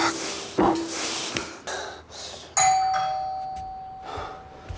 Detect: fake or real real